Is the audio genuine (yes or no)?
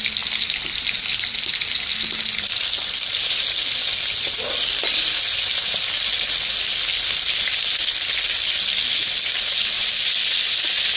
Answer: yes